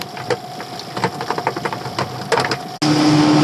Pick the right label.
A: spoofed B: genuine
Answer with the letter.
B